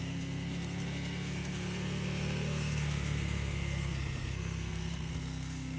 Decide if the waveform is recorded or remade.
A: remade